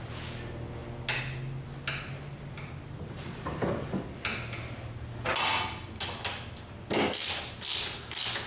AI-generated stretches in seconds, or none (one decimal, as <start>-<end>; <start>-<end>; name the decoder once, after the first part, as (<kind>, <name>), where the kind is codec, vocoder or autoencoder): none